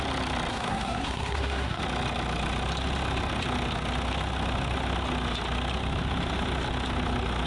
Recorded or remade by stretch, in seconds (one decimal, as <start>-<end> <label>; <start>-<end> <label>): 0.0-0.5 recorded; 0.5-1.8 remade; 1.8-7.5 recorded